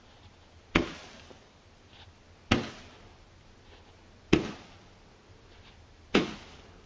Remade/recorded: recorded